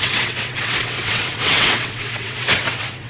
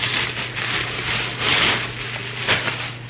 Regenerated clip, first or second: first